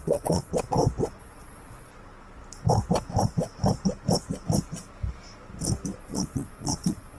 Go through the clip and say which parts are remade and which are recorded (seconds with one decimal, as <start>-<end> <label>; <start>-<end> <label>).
0.0-0.5 remade; 0.5-1.2 recorded; 1.2-1.9 remade; 1.9-6.0 recorded; 6.0-7.2 remade